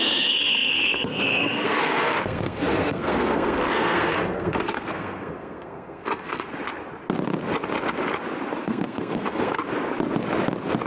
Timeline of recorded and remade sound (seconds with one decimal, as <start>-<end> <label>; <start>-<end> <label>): 0.0-6.5 remade; 6.5-8.6 recorded; 8.6-9.6 remade; 9.6-10.9 recorded